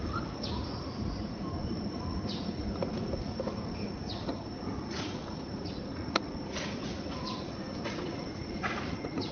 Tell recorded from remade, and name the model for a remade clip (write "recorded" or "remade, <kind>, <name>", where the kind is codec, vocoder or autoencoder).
remade, vocoder, Vocos